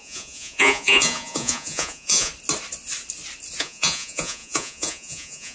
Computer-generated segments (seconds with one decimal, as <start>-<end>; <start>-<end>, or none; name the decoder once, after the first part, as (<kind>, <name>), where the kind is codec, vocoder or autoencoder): 0.0-2.3 (vocoder, Vocos); 3.6-5.5